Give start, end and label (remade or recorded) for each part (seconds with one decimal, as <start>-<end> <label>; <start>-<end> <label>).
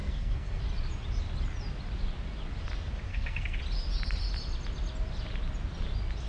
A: 0.0-0.6 remade; 0.6-3.1 recorded; 3.1-3.6 remade; 3.6-6.3 recorded